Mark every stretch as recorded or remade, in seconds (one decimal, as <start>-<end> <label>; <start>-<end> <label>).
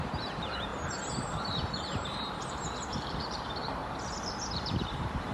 0.0-3.8 remade; 3.8-4.5 recorded; 4.5-5.3 remade